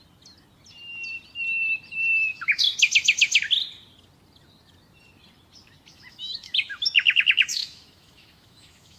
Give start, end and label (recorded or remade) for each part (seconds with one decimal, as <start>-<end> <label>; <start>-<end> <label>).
0.0-2.3 recorded; 2.3-3.4 remade; 3.4-5.9 recorded; 5.9-9.0 remade